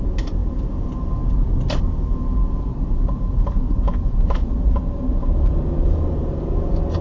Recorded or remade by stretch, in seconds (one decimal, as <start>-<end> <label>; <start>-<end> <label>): 0.0-2.7 recorded; 2.7-6.1 remade; 6.1-7.0 recorded